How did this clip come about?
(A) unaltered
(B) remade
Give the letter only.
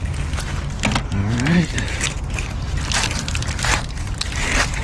A